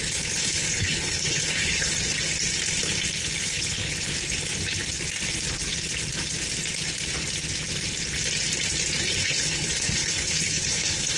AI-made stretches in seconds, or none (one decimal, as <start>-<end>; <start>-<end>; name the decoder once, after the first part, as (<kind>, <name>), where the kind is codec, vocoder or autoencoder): 0.0-1.9 (codec, HILCodec); 3.4-4.1; 9.0-11.2